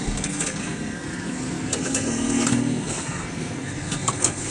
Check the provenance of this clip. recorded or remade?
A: remade